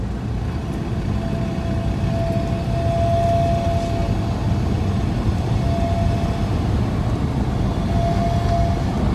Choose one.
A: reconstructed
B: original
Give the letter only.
B